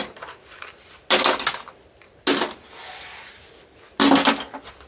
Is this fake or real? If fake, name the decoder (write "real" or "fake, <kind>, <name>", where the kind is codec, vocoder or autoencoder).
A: real